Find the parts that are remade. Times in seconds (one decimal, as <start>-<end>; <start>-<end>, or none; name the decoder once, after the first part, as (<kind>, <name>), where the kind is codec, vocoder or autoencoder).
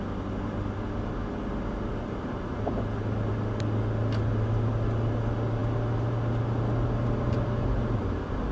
none